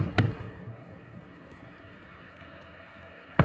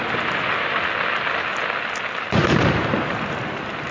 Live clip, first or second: second